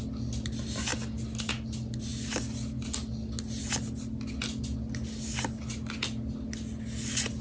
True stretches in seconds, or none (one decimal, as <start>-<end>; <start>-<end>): 0.0-7.4